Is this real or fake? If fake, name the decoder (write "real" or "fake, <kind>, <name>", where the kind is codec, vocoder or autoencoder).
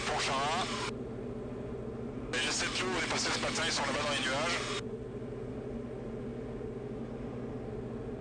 real